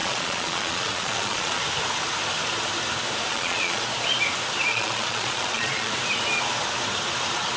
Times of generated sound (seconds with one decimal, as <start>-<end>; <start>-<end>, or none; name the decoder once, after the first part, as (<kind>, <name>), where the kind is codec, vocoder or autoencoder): 0.0-1.6 (vocoder, Vocos); 3.3-3.8; 4.7-5.9